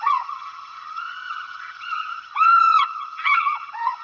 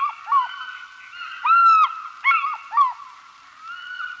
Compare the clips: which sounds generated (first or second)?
first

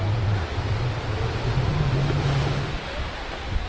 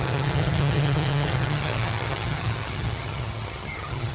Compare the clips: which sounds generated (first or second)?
second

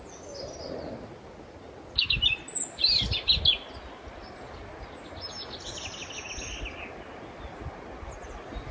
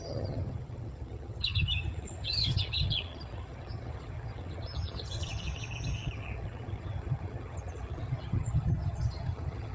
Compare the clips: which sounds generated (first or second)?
second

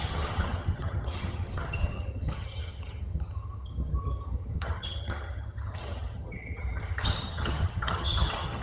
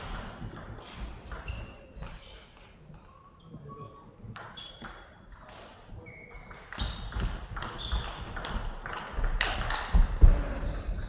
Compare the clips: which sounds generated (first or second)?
first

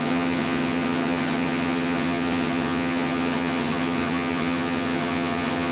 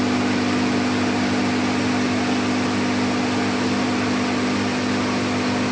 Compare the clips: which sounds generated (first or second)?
first